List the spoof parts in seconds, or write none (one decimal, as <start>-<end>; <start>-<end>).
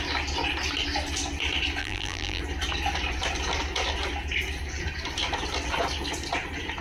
1.8-2.4